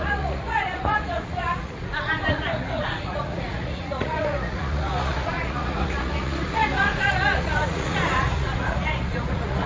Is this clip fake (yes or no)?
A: yes